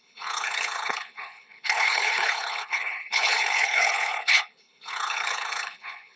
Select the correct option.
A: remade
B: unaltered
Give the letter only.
A